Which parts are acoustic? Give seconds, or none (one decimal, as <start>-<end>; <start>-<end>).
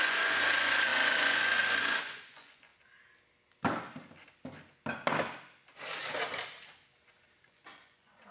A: 2.7-7.5